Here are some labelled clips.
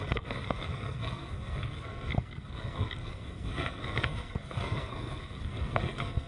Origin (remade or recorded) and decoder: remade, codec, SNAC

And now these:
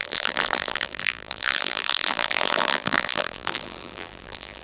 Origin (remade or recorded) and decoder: remade, vocoder, BigVGAN v2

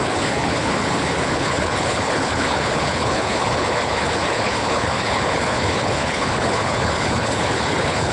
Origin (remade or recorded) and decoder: remade, codec, HILCodec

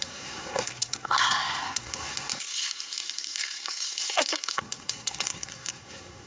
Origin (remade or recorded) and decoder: remade, codec, SNAC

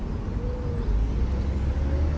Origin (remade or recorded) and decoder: recorded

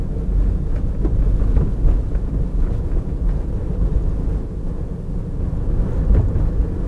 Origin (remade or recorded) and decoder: recorded